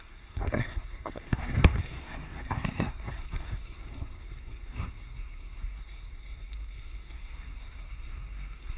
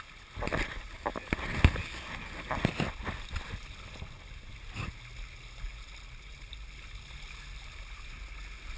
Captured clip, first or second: second